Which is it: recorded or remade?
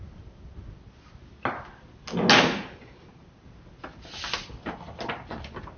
recorded